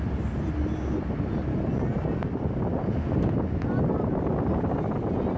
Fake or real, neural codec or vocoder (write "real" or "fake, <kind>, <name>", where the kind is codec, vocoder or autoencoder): real